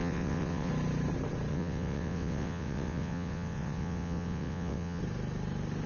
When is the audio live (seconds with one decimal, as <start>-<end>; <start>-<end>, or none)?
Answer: 0.7-1.5; 5.0-5.9